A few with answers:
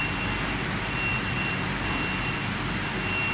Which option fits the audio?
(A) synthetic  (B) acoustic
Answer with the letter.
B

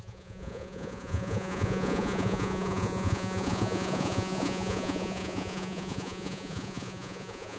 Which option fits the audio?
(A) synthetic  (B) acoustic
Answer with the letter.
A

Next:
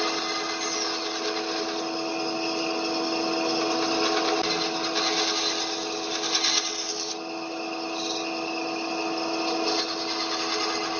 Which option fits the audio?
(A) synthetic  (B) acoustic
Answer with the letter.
B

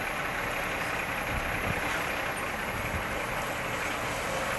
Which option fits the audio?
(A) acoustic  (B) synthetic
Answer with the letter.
A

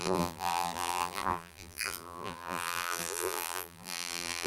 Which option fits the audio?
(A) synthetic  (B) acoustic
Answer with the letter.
A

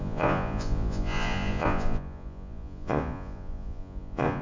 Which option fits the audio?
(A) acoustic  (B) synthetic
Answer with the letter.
B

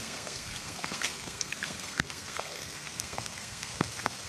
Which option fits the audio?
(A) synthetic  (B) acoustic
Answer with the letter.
A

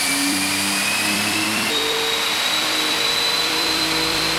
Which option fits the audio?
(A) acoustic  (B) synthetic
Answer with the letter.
B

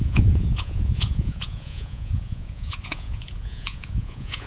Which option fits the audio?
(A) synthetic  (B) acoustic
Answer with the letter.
A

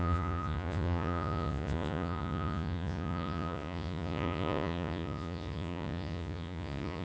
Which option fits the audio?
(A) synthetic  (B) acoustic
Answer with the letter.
A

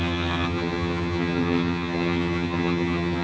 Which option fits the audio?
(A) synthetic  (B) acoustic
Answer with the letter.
A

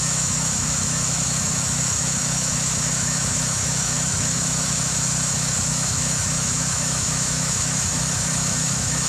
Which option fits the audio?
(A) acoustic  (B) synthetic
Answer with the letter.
B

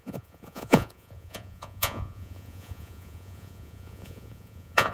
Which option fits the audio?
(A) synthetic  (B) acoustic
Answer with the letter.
A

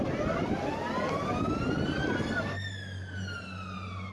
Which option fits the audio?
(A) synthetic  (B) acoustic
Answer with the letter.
B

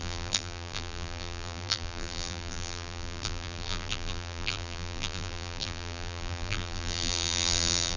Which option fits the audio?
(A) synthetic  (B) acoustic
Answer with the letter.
A